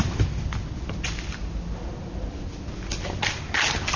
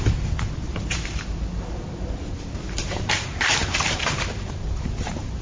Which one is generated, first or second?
second